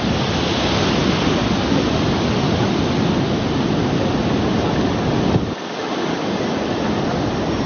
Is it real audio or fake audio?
real